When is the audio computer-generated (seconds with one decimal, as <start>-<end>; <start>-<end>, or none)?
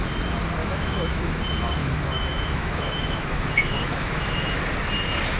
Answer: 0.6-1.4; 1.8-4.6